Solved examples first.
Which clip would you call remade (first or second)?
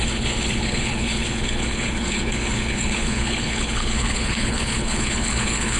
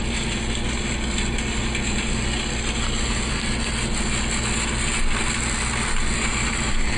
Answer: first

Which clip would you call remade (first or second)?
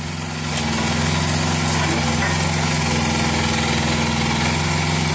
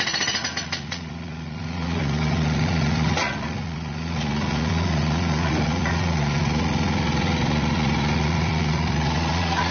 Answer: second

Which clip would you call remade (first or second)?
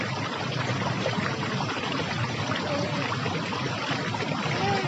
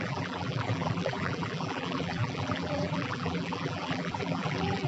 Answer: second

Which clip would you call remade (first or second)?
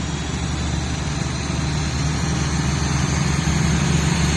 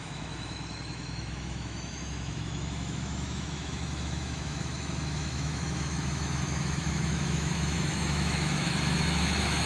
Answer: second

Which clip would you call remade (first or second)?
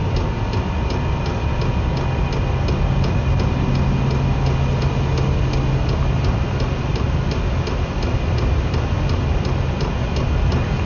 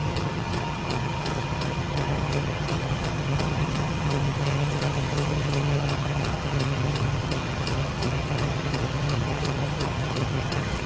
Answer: second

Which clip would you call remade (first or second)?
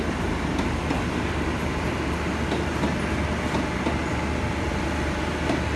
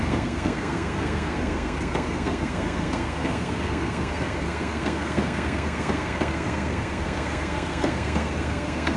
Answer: second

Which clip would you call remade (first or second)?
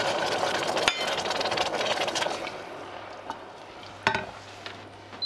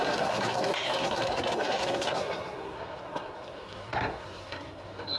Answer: second